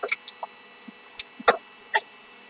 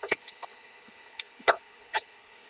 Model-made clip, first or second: second